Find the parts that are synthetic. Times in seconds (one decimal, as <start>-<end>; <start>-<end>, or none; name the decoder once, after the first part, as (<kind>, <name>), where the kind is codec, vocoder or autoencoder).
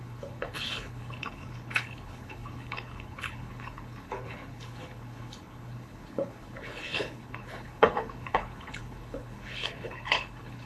0.0-10.7 (codec, HILCodec)